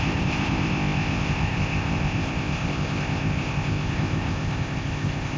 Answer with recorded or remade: remade